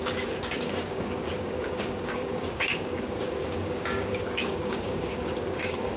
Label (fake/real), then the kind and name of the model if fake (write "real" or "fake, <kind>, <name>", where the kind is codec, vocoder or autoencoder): fake, codec, DAC